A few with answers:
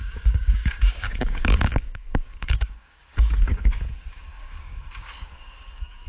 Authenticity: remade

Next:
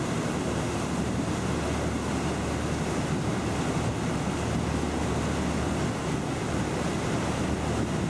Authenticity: recorded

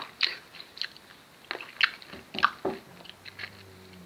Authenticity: recorded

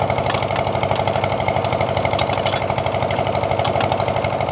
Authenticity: recorded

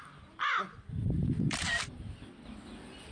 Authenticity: recorded